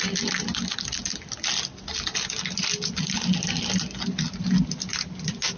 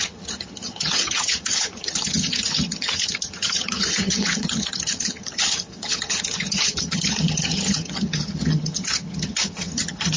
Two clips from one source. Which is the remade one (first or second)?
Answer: second